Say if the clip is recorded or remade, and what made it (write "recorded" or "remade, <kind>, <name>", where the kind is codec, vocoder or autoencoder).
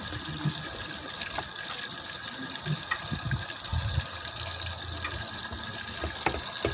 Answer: recorded